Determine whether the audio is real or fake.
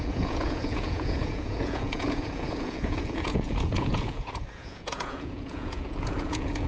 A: fake